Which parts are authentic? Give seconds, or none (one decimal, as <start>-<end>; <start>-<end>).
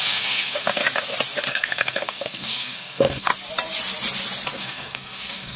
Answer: 0.8-1.5; 3.3-4.6